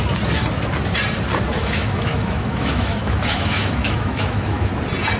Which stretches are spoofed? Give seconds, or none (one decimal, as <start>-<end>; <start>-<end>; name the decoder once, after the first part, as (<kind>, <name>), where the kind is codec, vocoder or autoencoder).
1.6-4.7 (autoencoder, DAC-VAE)